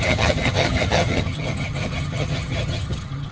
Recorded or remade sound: remade